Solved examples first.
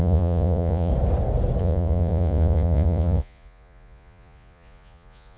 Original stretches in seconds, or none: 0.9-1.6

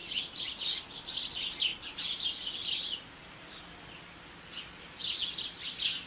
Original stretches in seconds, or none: 0.0-1.7; 3.6-5.0; 5.6-6.1

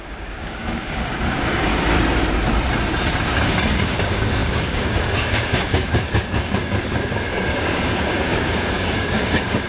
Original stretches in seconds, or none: 1.7-3.8

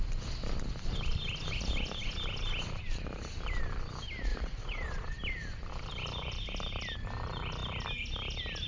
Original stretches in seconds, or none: 0.0-4.3; 5.2-8.7